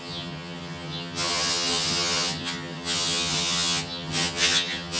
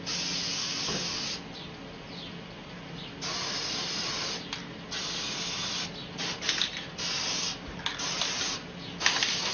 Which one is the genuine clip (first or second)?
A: second